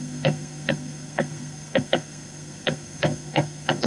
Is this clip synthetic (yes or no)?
yes